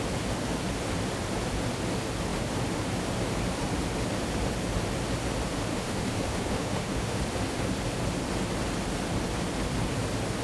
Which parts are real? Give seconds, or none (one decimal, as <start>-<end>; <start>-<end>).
0.0-5.7; 7.2-10.4